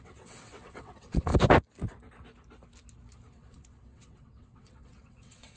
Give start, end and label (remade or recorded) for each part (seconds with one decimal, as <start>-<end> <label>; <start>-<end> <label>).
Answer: 0.0-1.3 remade; 1.3-3.3 recorded; 3.3-5.6 remade